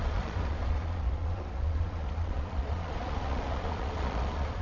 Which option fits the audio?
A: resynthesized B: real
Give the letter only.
A